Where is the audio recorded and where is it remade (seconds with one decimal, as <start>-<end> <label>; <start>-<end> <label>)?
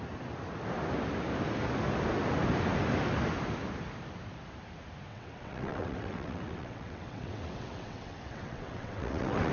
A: 0.0-5.1 recorded; 5.1-9.5 remade